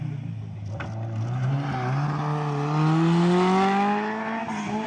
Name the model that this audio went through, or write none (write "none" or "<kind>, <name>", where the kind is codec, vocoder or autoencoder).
none